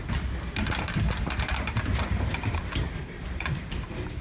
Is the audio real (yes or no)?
yes